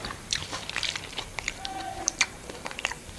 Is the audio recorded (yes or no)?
no